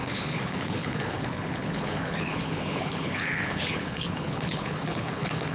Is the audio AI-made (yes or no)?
yes